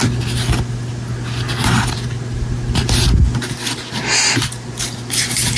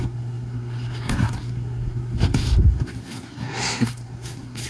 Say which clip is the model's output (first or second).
second